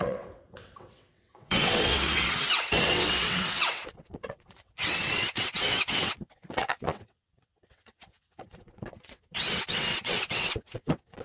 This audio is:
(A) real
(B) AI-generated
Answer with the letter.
B